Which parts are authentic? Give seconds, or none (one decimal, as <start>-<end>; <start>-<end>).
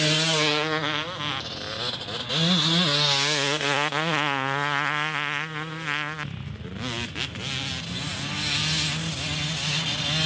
0.0-10.3